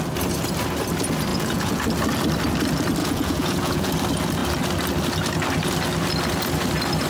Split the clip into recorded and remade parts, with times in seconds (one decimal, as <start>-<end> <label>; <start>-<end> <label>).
0.0-1.3 recorded; 1.3-1.8 remade; 1.8-3.0 recorded; 3.0-3.9 remade; 3.9-7.1 recorded